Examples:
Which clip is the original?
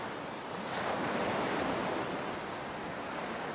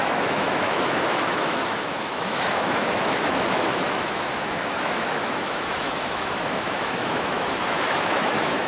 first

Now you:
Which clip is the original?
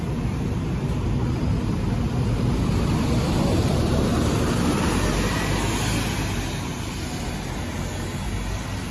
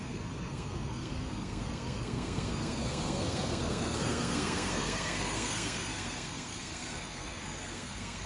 first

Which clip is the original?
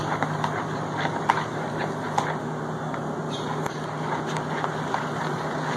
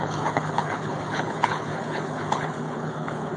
first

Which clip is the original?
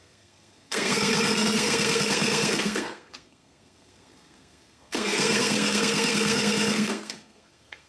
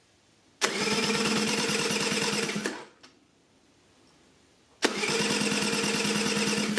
second